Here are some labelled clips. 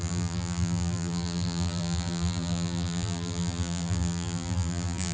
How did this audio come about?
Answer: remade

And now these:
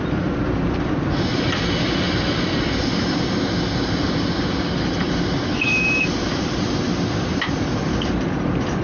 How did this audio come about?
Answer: remade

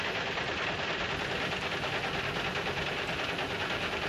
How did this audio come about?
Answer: recorded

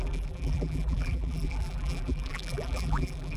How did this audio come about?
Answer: remade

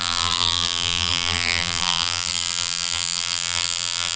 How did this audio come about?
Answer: remade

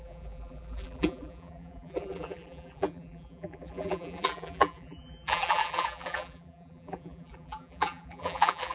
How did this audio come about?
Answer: remade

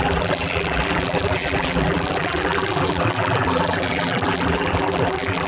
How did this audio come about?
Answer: remade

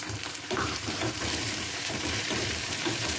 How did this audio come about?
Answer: remade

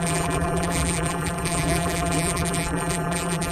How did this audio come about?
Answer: remade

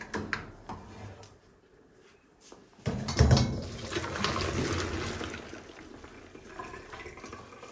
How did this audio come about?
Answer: recorded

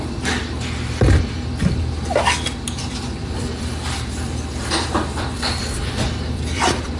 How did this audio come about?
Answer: remade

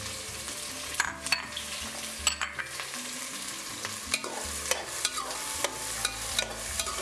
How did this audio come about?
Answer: recorded